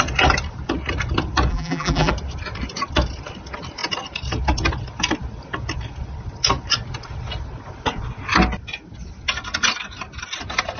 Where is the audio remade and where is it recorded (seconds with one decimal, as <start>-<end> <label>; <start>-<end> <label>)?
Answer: 0.0-1.5 recorded; 1.5-2.1 remade; 2.1-10.8 recorded